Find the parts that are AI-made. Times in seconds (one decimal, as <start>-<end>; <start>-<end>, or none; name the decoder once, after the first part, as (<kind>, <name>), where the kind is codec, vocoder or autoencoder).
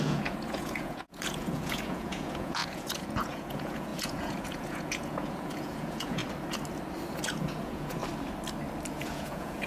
0.0-6.2 (vocoder, Vocos); 7.2-8.0; 8.9-9.7